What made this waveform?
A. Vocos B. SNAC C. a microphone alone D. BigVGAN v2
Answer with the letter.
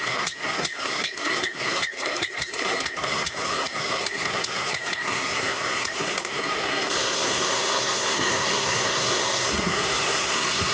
B